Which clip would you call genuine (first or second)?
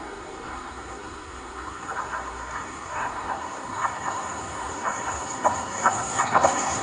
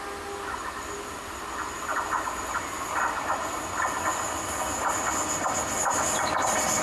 second